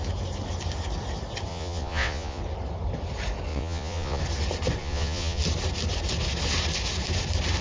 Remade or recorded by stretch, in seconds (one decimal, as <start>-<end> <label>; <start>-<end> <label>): 0.0-1.5 recorded; 1.5-2.4 remade; 2.4-3.5 recorded; 3.5-4.2 remade; 4.2-4.8 recorded; 4.8-5.4 remade; 5.4-7.6 recorded

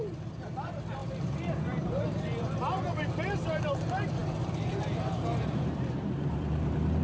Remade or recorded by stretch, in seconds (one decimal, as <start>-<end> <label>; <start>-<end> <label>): 0.0-7.0 remade